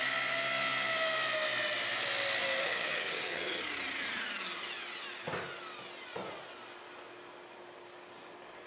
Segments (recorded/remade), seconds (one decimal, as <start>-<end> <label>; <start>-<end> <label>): 0.0-2.6 recorded; 2.6-3.6 remade; 3.6-8.7 recorded